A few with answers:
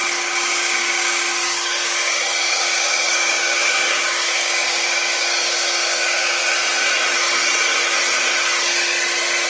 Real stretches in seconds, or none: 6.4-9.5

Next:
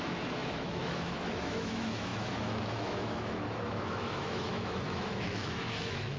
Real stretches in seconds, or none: none

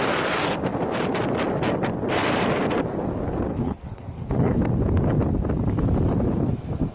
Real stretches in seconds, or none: 0.0-3.5; 4.6-6.9

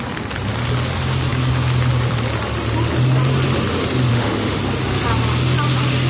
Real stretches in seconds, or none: 0.0-4.1; 4.6-6.1

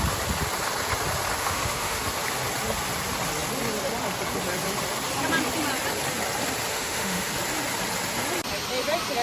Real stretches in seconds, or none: 0.0-1.4; 2.0-6.7; 7.3-9.2